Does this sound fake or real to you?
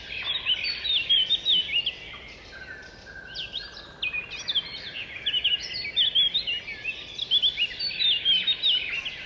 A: real